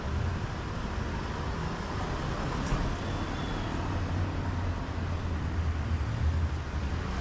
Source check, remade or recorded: recorded